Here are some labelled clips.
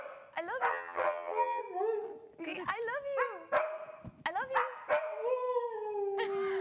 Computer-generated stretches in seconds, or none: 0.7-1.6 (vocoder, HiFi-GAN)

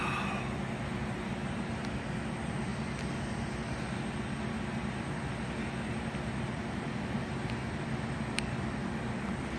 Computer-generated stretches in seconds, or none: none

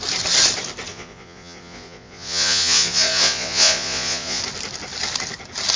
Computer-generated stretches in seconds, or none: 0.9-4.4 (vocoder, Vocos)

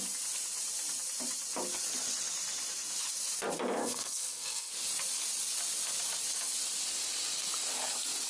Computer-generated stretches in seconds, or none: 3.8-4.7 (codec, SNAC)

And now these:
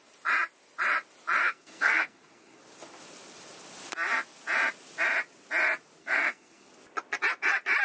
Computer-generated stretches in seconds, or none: 1.4-2.6 (codec, SNAC); 6.0-6.7

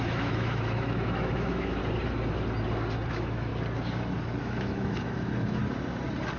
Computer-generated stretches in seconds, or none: 0.0-1.8 (autoencoder, DAC-VAE); 3.1-3.5; 4.4-5.6

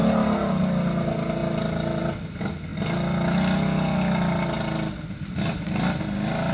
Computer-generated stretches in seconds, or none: none